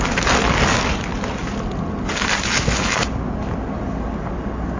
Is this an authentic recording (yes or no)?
yes